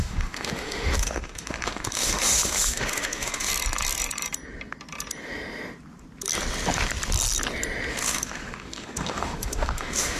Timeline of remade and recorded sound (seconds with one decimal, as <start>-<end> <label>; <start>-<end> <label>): 0.0-3.5 remade; 3.5-7.9 recorded; 7.9-10.2 remade

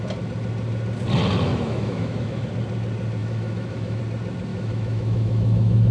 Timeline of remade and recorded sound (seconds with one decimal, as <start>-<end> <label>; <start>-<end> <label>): 0.0-1.5 recorded; 1.5-2.5 remade; 2.5-3.2 recorded; 3.2-4.0 remade; 4.0-4.5 recorded; 4.5-5.9 remade

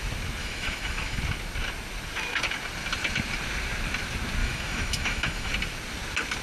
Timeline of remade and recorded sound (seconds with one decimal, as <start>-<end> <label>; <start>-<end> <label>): 0.0-0.4 recorded; 0.4-1.2 remade; 1.2-4.4 recorded; 4.4-5.5 remade; 5.5-6.4 recorded

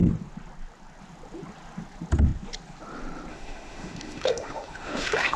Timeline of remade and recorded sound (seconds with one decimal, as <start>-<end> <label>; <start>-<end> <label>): 0.0-3.3 recorded; 3.3-5.4 remade

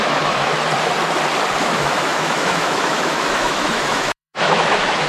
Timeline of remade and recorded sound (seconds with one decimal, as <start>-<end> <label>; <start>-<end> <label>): 0.0-0.5 remade; 0.5-1.6 recorded; 1.6-5.1 remade

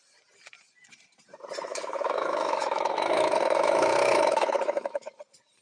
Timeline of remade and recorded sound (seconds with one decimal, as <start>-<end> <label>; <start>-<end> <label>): 0.0-1.7 recorded; 1.7-5.1 remade; 5.1-5.6 recorded